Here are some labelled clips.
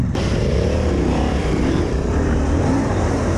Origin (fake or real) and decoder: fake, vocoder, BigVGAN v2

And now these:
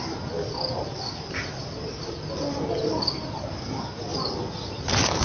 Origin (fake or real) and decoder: real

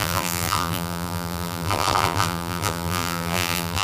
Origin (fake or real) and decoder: fake, vocoder, BigVGAN v2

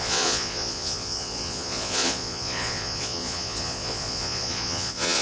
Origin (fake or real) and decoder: fake, vocoder, Vocos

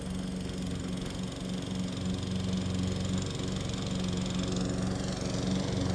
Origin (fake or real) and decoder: real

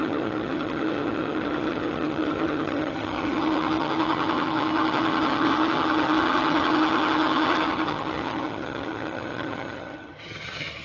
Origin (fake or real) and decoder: fake, vocoder, HiFi-GAN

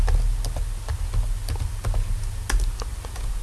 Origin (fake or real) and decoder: real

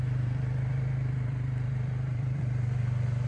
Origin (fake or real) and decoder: fake, vocoder, BigVGAN v2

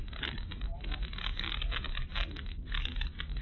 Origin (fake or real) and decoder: real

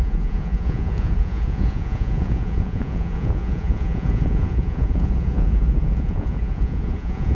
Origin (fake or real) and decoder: fake, vocoder, Vocos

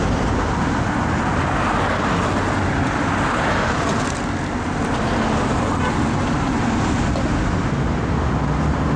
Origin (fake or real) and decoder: real